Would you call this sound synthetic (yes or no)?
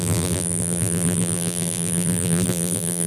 yes